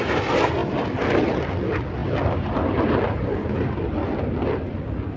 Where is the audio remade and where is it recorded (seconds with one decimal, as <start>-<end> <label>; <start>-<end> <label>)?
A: 0.0-0.6 recorded; 0.6-1.4 remade; 1.4-2.0 recorded; 2.0-5.2 remade